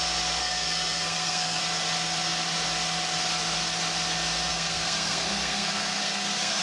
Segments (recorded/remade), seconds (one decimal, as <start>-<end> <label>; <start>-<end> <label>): 0.0-0.4 recorded; 0.4-1.6 remade; 1.6-4.5 recorded; 4.5-6.6 remade